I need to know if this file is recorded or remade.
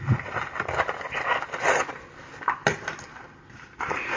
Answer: recorded